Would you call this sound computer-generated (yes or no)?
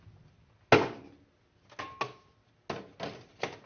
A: no